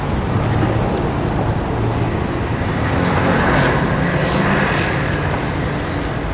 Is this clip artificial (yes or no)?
no